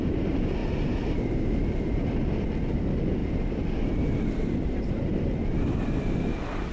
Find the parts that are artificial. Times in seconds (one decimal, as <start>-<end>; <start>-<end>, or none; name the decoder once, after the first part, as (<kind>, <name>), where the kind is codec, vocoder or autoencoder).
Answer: none